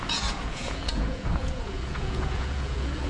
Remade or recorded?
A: remade